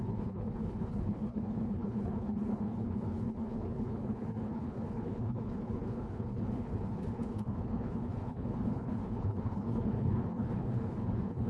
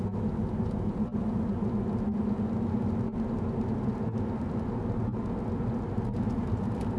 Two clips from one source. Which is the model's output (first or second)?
first